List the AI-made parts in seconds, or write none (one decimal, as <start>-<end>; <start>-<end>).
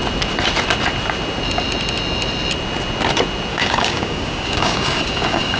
3.5-5.6